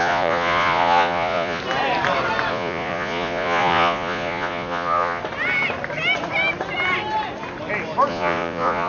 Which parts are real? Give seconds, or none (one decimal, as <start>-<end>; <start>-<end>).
1.6-2.5; 5.2-8.1